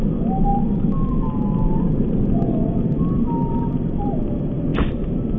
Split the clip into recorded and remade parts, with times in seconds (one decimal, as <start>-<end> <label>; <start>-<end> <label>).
0.0-4.7 recorded; 4.7-5.4 remade

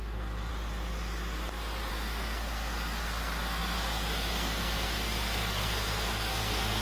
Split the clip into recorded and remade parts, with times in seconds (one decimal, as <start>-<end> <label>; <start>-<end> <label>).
0.0-0.5 remade; 0.5-1.9 recorded; 1.9-6.8 remade

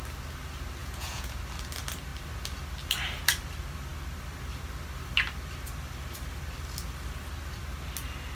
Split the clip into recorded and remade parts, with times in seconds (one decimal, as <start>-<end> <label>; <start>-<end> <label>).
0.0-0.8 recorded; 0.8-1.4 remade; 1.4-8.3 recorded